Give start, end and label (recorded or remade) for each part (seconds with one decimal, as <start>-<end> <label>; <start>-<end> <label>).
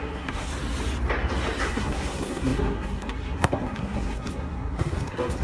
0.0-0.5 remade; 0.5-1.6 recorded; 1.6-5.4 remade